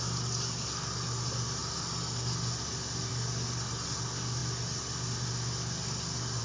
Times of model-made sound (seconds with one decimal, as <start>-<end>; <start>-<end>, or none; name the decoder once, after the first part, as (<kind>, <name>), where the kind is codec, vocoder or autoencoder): none